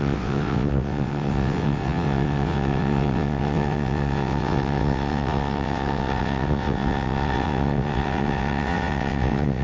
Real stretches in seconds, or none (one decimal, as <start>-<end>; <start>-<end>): none